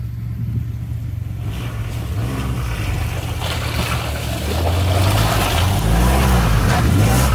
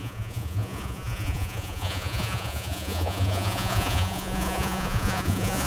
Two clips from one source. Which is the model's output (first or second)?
second